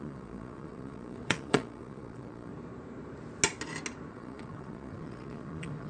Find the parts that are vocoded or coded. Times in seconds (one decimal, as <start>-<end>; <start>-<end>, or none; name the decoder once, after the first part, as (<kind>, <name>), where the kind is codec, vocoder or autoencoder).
0.0-2.5 (vocoder, Vocos); 4.1-5.9